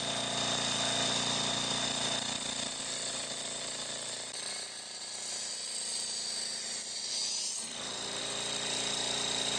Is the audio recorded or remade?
recorded